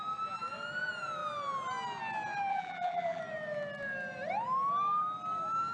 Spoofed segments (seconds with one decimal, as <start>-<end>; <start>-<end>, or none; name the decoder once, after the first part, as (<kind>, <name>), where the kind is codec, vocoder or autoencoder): 2.5-3.2 (vocoder, BigVGAN v2)